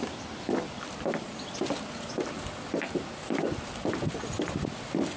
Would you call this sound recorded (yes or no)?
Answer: yes